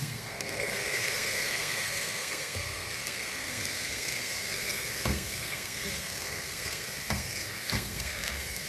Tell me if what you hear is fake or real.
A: fake